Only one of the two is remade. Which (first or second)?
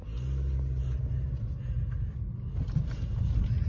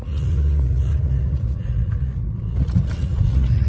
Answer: second